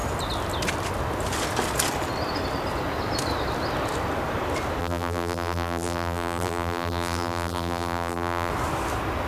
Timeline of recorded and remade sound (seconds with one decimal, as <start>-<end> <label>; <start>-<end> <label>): 0.0-4.8 recorded; 4.8-8.5 remade; 8.5-9.3 recorded